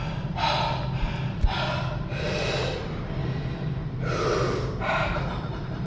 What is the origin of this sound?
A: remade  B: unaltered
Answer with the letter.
B